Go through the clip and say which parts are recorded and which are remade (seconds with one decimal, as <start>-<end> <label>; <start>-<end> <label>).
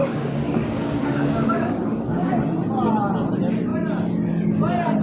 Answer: 0.0-2.4 remade; 2.4-5.0 recorded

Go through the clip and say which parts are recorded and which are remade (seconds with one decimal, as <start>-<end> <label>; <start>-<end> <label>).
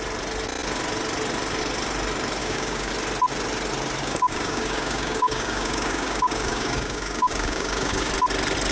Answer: 0.0-2.4 recorded; 2.4-2.9 remade; 2.9-4.0 recorded; 4.0-8.1 remade; 8.1-8.7 recorded